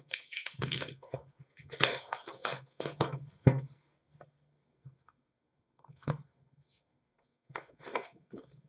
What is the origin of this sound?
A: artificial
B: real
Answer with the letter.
A